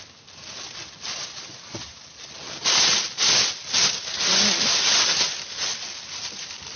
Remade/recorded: recorded